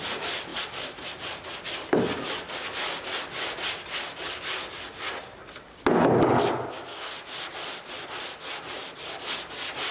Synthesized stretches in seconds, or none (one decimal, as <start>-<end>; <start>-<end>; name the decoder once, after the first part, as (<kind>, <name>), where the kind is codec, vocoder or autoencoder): none